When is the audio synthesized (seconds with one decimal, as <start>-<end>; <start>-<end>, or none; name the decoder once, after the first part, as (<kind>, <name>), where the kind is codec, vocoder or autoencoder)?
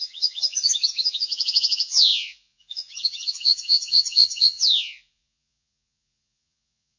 0.0-7.0 (vocoder, Vocos)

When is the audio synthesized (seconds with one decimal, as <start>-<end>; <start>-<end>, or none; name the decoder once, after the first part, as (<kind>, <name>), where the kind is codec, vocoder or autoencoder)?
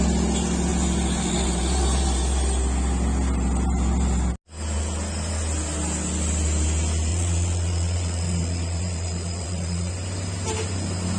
7.1-9.9 (vocoder, Vocos)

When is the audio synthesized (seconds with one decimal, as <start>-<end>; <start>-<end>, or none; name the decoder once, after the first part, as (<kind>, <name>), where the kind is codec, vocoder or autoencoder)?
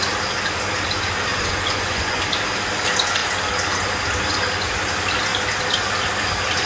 1.3-2.2 (vocoder, Vocos)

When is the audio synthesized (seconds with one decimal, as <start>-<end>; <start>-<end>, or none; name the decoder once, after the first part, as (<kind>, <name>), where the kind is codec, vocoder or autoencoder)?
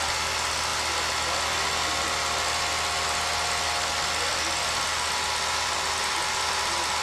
none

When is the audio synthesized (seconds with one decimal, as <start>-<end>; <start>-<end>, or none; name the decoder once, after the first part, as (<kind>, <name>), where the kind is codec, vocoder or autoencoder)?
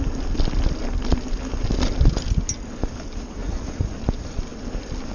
3.4-3.9 (vocoder, Vocos)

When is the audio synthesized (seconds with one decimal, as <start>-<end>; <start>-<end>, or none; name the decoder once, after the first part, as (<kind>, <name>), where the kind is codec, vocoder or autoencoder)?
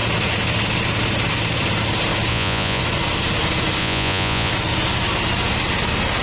2.3-2.8 (vocoder, Vocos); 3.8-4.5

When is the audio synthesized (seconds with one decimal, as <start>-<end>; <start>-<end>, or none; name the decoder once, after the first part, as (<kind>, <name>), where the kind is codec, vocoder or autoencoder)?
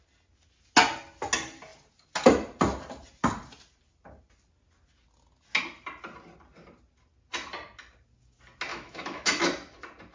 8.7-9.4 (autoencoder, DAC-VAE)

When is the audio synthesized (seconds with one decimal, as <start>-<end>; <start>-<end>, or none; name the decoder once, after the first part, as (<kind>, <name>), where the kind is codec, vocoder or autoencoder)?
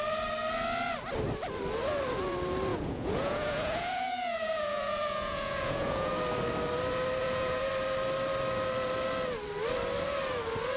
2.7-6.1 (vocoder, Vocos); 7.2-7.7